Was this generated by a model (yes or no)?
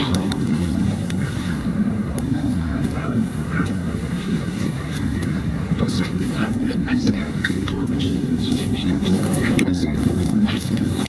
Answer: yes